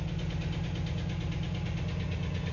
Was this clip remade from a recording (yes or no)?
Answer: no